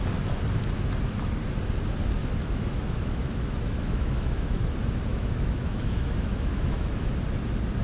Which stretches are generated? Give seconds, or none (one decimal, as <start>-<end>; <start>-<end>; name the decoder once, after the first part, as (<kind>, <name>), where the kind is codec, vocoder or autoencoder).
2.2-4.6 (autoencoder, DAC-VAE); 5.1-7.1